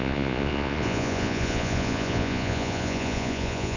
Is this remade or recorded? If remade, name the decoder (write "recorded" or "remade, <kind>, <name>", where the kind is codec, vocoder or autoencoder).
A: remade, vocoder, Vocos